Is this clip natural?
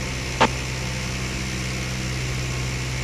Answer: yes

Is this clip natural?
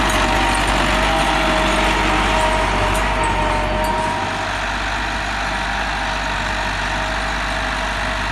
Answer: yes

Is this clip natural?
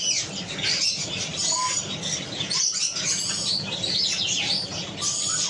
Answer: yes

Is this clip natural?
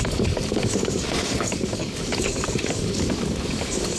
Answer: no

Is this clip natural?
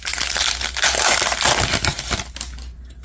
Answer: yes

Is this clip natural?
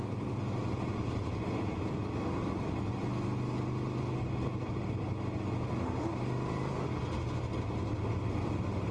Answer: yes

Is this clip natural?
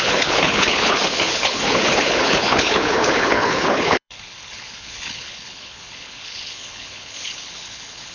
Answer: no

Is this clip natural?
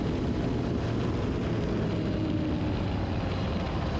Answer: yes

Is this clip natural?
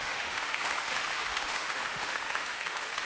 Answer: no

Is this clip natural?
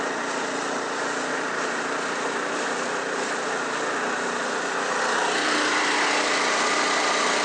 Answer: yes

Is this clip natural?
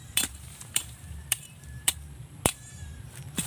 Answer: no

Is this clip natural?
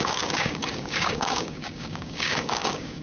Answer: no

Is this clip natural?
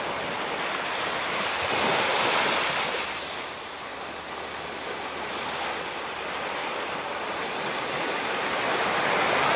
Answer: yes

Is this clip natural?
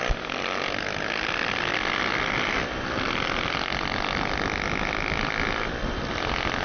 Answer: yes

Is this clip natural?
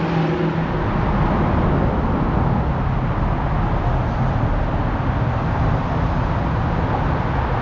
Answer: yes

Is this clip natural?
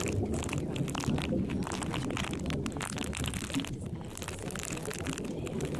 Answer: yes